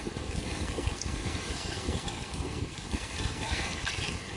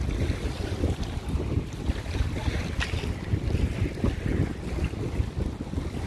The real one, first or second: second